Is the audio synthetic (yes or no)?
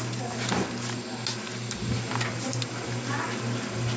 no